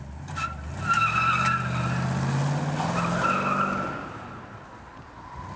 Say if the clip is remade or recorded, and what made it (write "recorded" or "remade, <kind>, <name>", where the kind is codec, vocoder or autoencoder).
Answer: recorded